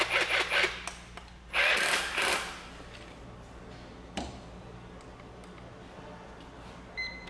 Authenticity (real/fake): real